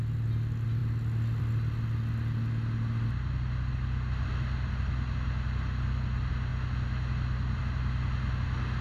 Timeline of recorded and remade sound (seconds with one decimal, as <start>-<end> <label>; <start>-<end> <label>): 0.0-8.8 recorded